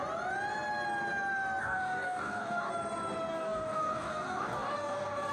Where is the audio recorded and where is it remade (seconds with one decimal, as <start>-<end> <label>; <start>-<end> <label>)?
0.0-1.6 recorded; 1.6-2.7 remade; 2.7-3.3 recorded; 3.3-5.3 remade